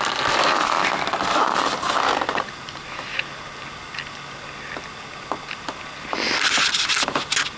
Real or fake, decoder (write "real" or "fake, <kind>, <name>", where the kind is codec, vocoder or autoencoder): real